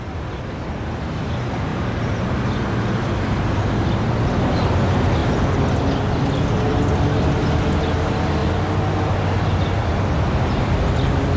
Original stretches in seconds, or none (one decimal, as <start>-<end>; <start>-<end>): 0.0-1.7; 2.3-11.4